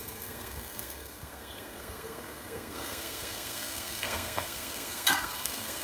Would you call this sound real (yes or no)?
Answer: no